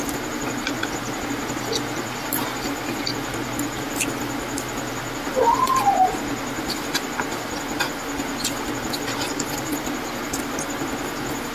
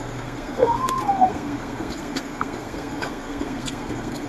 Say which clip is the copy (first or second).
second